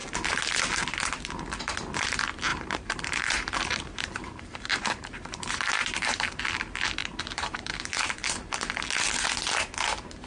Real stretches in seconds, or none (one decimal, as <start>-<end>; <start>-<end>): 0.0-2.5; 6.4-7.0; 8.4-10.3